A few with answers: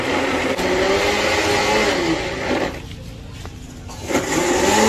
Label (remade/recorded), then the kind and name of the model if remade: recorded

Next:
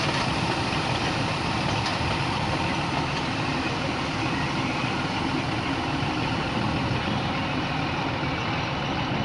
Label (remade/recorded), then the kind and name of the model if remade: remade, vocoder, BigVGAN v2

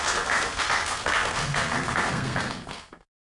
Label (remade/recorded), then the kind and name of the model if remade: remade, codec, SNAC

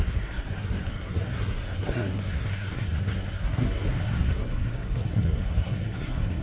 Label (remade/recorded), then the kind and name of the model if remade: remade, codec, SNAC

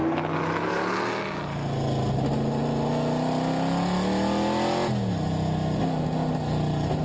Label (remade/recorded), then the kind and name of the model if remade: recorded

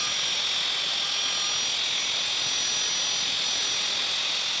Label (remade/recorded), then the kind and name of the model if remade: recorded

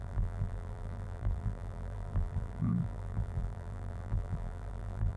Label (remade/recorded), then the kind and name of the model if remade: remade, vocoder, BigVGAN v2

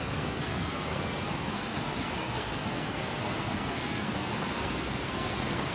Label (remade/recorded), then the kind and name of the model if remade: remade, codec, SNAC